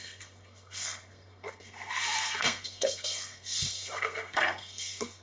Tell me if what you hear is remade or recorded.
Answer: remade